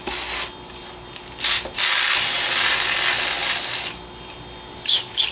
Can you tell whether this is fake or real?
real